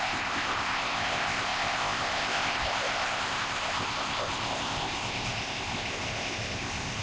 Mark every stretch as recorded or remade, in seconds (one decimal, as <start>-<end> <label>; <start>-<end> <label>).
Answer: 0.0-7.0 remade